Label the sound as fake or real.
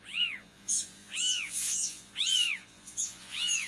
fake